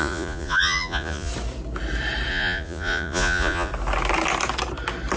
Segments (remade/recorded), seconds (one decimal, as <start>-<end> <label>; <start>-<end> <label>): 0.0-1.3 remade; 1.3-2.3 recorded; 2.3-3.7 remade; 3.7-5.2 recorded